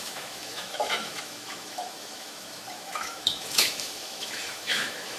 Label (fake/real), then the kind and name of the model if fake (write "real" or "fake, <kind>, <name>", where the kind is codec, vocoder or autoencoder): fake, autoencoder, DAC-VAE